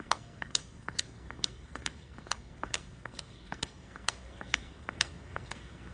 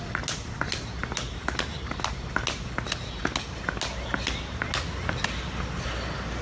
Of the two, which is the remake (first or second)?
first